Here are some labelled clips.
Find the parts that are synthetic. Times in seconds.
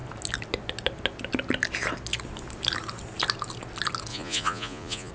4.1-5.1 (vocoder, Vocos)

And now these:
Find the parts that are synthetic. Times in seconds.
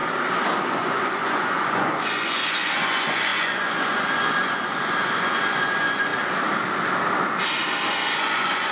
0.6-6.1 (vocoder, Vocos); 7.9-8.7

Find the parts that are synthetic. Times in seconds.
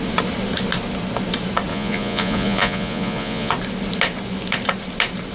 1.7-3.5 (vocoder, Vocos)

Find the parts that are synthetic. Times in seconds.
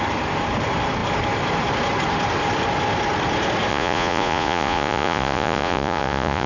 3.7-6.5 (vocoder, Vocos)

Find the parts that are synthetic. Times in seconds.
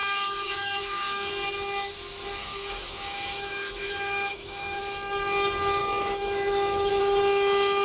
0.0-1.3 (autoencoder, DAC-VAE); 2.4-4.8; 5.8-7.0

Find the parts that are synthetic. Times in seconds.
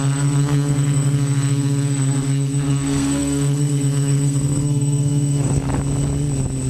0.0-5.7 (codec, SNAC)